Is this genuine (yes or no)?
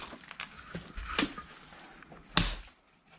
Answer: yes